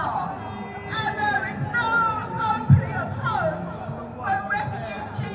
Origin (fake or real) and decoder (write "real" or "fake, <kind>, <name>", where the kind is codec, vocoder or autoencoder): real